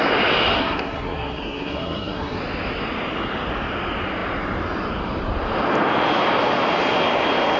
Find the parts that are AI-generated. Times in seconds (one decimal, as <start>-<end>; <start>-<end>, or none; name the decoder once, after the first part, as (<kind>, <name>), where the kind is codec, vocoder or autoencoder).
0.6-2.4 (codec, SNAC)